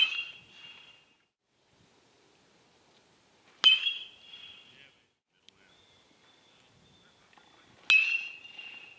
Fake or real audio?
real